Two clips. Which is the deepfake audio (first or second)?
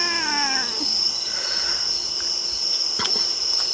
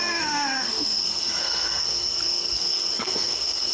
second